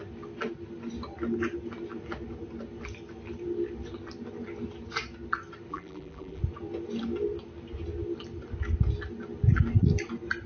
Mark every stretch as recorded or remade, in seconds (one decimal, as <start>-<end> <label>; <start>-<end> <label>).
0.0-5.7 recorded; 5.7-6.4 remade; 6.4-10.5 recorded

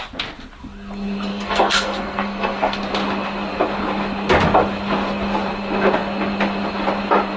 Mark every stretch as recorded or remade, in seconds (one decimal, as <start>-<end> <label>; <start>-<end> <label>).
0.0-1.3 recorded; 1.3-2.8 remade; 2.8-7.4 recorded

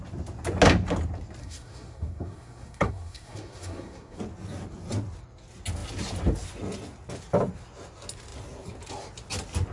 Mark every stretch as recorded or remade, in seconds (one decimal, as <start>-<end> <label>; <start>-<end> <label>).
0.0-1.4 recorded; 1.4-4.2 remade; 4.2-9.7 recorded

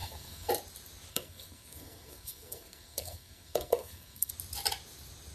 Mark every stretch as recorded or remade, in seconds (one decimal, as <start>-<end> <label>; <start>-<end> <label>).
0.0-0.5 remade; 0.5-1.1 recorded; 1.1-4.3 remade; 4.3-5.3 recorded